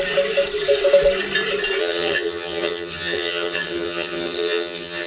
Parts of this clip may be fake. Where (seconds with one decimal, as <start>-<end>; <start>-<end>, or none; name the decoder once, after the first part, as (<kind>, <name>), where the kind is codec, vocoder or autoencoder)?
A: 1.8-5.1 (vocoder, HiFi-GAN)